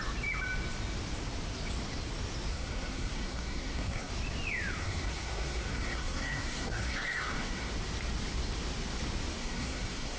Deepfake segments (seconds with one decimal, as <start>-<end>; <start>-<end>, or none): 2.5-4.1; 4.8-7.7; 9.4-10.2